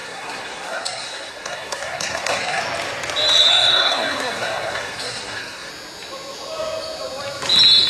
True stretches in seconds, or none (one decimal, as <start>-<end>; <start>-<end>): 2.6-3.5; 5.7-7.9